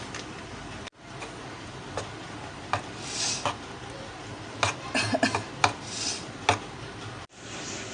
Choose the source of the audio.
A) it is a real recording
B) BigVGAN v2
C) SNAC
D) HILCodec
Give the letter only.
A